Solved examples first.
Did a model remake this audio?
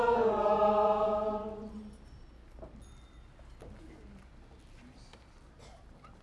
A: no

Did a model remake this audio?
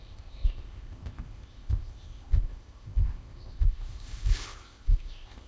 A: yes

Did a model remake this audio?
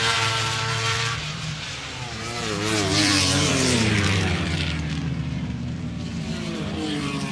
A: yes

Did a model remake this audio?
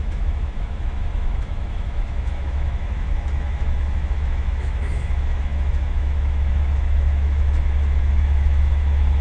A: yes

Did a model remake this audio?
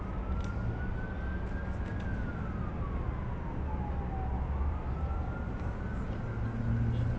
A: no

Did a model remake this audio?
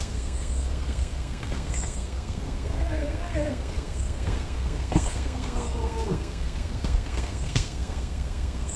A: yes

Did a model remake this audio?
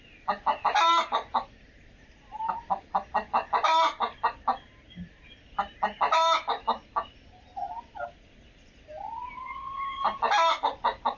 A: no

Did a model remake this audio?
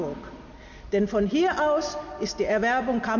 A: no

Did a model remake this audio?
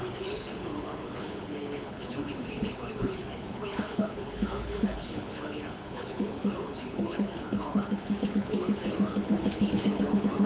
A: yes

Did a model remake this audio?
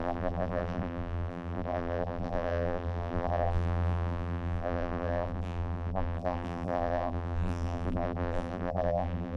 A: yes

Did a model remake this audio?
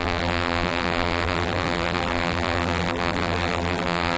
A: yes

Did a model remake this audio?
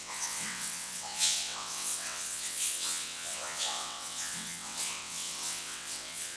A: yes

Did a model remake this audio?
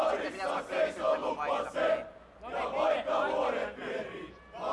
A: no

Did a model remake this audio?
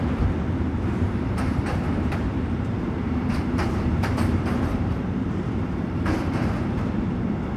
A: yes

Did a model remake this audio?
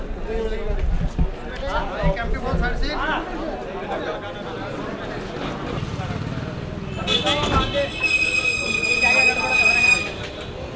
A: no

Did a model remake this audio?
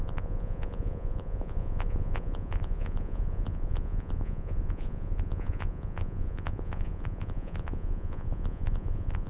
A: yes